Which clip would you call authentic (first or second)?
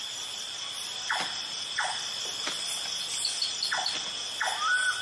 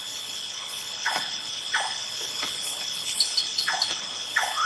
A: first